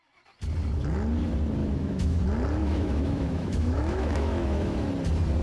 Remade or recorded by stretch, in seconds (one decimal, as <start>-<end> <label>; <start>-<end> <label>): 0.0-1.6 recorded; 1.6-2.2 remade; 2.2-2.6 recorded; 2.6-4.9 remade; 4.9-5.4 recorded